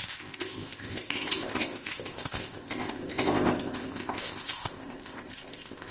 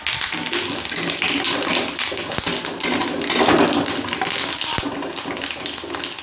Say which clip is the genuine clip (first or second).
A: second